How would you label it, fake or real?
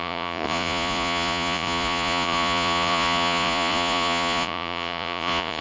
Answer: fake